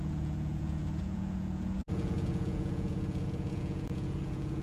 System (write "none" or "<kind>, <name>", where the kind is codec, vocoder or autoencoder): vocoder, Vocos